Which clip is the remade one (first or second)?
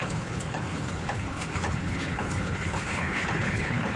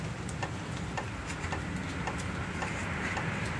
first